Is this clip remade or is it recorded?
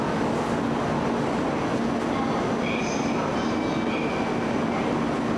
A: recorded